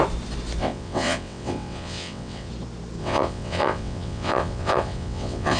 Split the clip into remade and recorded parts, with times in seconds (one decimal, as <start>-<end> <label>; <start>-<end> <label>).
0.0-0.6 recorded; 0.6-2.5 remade; 2.5-3.0 recorded; 3.0-5.6 remade